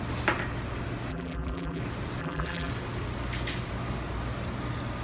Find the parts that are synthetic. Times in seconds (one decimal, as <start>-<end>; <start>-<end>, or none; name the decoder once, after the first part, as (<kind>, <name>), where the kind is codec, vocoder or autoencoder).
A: 1.1-1.8 (vocoder, BigVGAN v2); 2.2-2.7